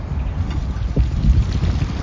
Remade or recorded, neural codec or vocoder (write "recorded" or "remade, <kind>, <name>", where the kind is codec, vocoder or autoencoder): recorded